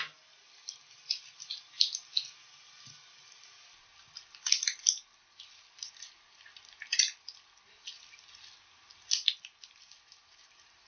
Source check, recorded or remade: recorded